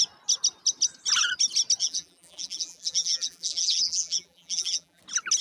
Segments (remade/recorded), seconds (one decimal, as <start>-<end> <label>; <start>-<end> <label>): 0.0-1.8 recorded; 1.8-5.0 remade; 5.0-5.4 recorded